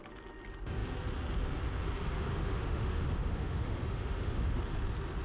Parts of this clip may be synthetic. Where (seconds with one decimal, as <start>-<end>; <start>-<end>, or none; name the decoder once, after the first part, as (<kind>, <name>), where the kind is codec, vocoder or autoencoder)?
2.3-4.6 (autoencoder, DAC-VAE)